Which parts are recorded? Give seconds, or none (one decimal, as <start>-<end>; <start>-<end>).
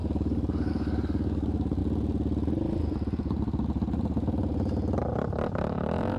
1.8-5.5